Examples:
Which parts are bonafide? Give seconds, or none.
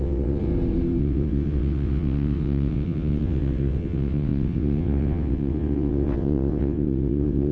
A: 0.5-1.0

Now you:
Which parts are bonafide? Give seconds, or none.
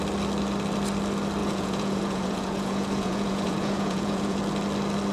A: 0.0-1.4; 4.4-5.1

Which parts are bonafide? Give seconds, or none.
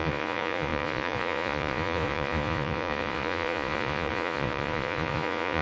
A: none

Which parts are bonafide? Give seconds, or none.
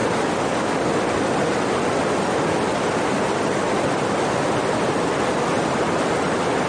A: 0.0-1.3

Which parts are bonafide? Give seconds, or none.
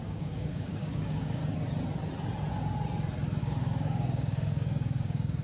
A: 1.4-3.4